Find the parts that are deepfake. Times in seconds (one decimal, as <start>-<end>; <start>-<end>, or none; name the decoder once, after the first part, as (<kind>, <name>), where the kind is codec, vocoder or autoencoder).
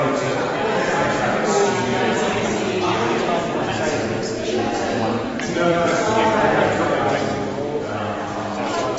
1.9-7.1 (vocoder, BigVGAN v2)